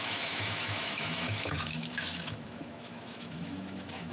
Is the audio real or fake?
fake